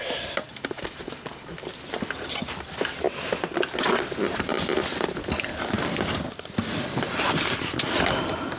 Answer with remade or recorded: recorded